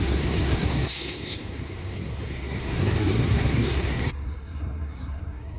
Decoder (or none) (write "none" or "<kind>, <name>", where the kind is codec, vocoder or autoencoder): codec, SNAC